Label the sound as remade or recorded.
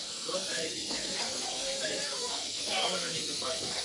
remade